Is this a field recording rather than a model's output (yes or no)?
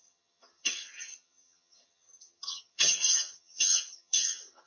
no